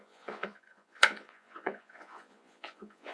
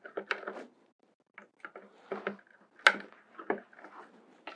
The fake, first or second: first